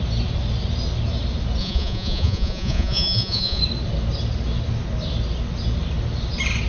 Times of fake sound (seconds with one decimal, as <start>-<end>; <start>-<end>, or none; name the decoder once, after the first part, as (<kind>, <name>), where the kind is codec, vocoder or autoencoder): 1.6-3.6 (vocoder, Vocos)